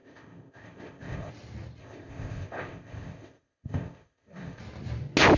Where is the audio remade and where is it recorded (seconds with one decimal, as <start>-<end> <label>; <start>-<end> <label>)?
0.0-1.3 remade; 1.3-1.8 recorded; 1.8-4.6 remade; 4.6-5.4 recorded